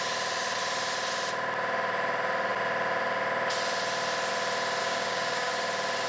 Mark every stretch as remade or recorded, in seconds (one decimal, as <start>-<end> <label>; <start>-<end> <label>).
0.0-4.8 recorded; 4.8-5.5 remade; 5.5-6.1 recorded